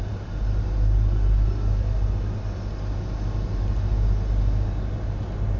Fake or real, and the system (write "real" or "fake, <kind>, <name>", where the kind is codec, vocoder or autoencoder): real